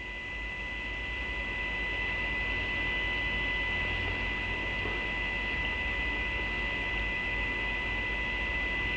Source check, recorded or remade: recorded